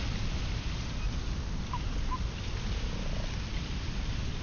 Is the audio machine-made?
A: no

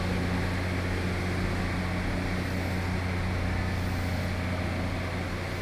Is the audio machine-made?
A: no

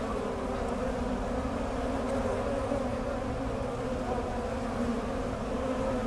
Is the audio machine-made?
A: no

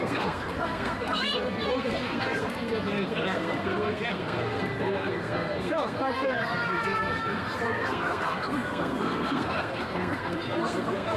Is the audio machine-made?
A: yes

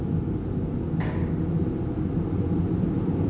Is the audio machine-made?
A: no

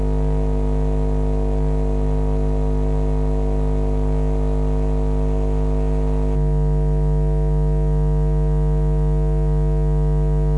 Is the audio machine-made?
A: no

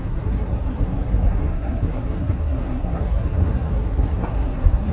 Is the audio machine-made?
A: yes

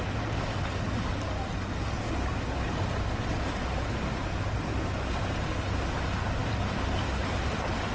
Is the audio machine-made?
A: no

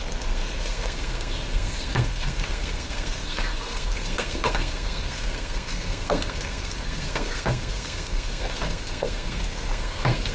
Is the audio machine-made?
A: yes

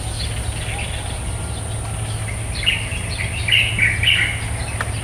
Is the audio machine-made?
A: no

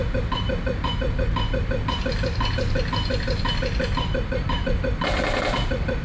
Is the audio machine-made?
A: no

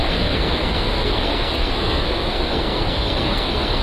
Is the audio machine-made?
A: yes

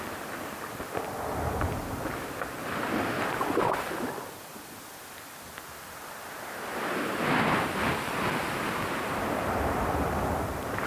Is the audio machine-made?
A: no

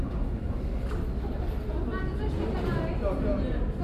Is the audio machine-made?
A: no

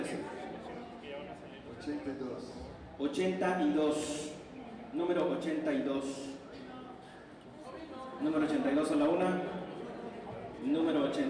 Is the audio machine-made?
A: no